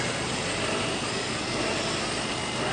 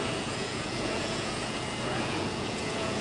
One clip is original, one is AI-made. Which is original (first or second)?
first